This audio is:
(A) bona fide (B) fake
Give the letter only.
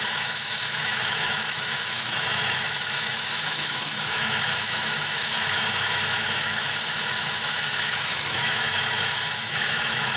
B